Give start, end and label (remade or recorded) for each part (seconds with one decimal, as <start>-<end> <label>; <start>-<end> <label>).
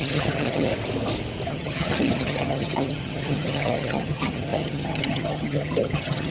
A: 0.0-0.7 remade; 0.7-1.5 recorded; 1.5-6.3 remade